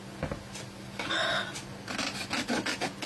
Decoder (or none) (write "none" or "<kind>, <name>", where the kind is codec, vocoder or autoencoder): none